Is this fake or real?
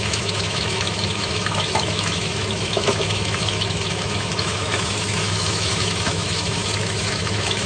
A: fake